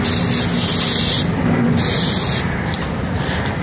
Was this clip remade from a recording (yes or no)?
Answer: no